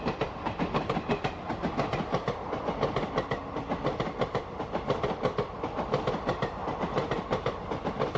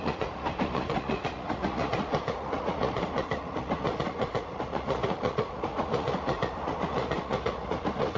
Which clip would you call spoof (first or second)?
second